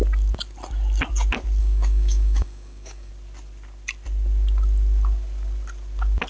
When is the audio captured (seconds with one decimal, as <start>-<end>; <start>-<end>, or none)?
0.0-1.6; 3.1-6.3